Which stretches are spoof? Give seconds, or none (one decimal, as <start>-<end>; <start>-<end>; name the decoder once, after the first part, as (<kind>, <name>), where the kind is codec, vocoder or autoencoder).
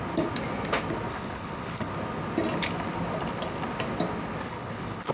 1.1-1.9 (codec, HILCodec); 4.4-5.1